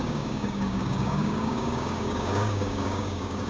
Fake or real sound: fake